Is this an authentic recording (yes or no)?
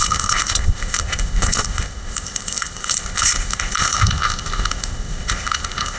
no